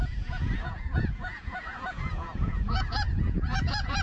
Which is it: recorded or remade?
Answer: remade